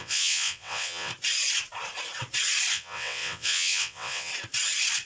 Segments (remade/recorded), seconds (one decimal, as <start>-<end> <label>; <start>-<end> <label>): 0.0-1.1 remade; 1.1-2.7 recorded; 2.7-4.3 remade; 4.3-5.1 recorded